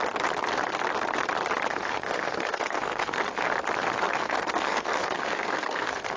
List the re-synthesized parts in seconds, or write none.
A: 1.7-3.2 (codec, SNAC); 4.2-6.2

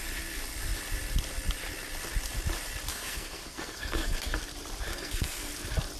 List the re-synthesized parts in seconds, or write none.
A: 2.9-4.4 (codec, SNAC); 4.9-5.5

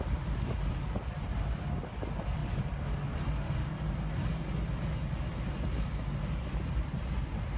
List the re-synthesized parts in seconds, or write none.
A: none